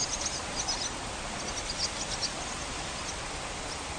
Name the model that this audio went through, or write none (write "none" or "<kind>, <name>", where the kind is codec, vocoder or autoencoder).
none